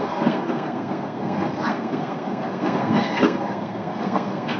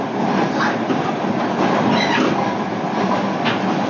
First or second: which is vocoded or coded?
first